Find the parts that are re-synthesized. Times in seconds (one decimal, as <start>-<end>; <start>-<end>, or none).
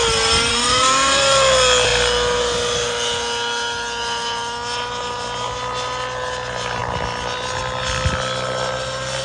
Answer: 0.5-1.2